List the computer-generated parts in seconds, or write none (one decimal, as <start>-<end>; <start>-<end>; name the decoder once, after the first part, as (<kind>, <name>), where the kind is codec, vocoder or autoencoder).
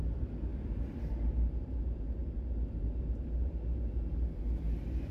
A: 0.5-3.6 (vocoder, BigVGAN v2)